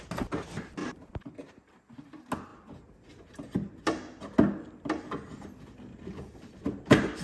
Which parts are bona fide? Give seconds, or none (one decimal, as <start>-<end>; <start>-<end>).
0.0-0.8; 1.8-7.2